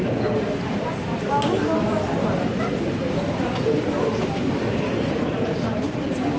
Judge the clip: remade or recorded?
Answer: recorded